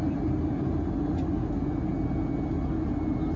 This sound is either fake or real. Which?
real